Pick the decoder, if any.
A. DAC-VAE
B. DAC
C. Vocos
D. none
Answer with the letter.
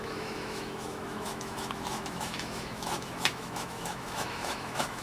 A